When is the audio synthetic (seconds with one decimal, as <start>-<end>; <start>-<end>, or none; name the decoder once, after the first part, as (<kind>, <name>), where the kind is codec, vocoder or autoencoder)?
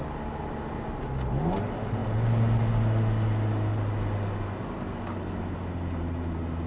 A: none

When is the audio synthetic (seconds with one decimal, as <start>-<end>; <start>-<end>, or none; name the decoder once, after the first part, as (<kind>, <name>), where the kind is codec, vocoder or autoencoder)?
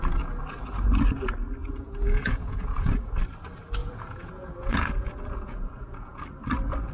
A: 1.6-3.1 (vocoder, Vocos); 3.8-6.2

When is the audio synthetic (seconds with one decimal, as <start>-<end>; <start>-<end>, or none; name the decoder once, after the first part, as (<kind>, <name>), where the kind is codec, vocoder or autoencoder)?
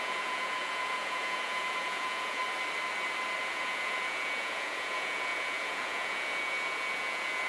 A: 0.0-2.4 (vocoder, Vocos); 3.4-7.5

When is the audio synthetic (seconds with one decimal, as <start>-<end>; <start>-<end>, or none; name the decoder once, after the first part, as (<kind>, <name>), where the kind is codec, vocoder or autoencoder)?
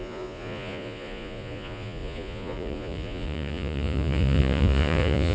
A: 0.0-5.3 (vocoder, Vocos)